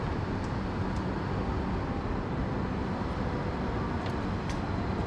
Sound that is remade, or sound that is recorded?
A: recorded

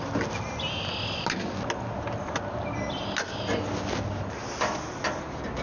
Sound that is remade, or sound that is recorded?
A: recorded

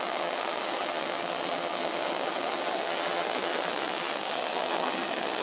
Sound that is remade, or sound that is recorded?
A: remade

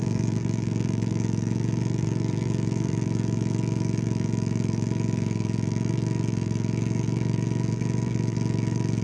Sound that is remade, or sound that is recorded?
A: remade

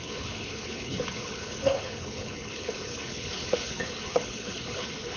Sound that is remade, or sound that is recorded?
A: remade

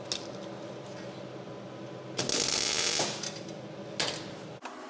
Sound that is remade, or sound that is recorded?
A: recorded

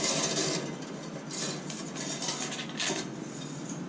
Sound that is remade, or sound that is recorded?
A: recorded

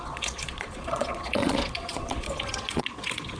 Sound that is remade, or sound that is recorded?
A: remade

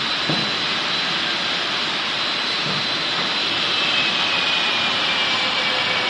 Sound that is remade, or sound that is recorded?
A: recorded